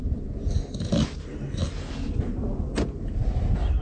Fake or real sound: real